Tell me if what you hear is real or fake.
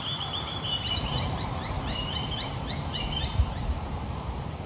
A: fake